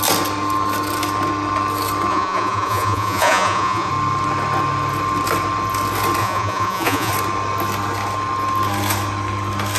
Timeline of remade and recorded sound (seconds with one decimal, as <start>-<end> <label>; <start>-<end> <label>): 0.0-2.1 recorded; 2.1-3.9 remade; 3.9-6.2 recorded; 6.2-7.1 remade; 7.1-9.8 recorded